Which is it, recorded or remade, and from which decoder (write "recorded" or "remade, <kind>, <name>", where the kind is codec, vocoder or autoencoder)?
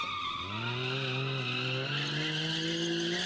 recorded